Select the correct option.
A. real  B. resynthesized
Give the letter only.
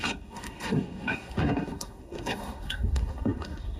B